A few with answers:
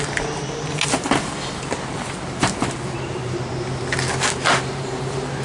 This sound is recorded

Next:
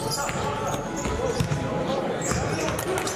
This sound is recorded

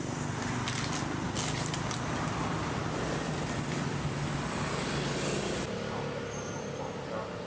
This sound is recorded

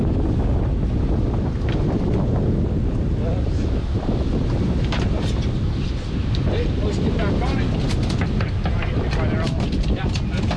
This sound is recorded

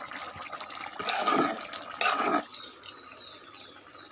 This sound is recorded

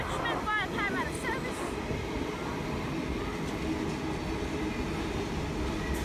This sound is recorded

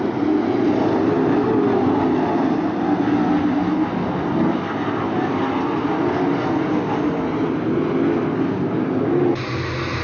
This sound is recorded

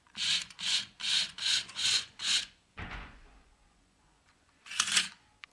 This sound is remade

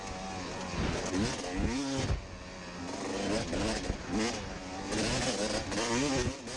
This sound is recorded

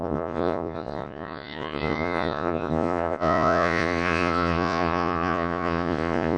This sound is remade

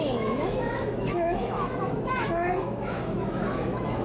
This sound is remade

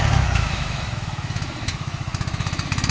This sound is remade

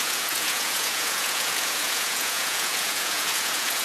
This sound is remade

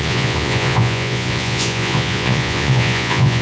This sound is remade